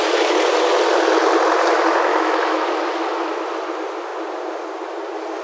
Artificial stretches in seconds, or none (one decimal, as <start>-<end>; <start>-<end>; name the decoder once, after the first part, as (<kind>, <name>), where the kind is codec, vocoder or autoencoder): 2.1-2.7 (autoencoder, DAC-VAE)